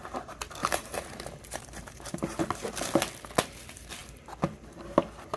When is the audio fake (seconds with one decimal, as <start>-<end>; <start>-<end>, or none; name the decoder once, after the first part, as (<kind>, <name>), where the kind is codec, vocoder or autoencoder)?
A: 0.6-2.4 (vocoder, BigVGAN v2)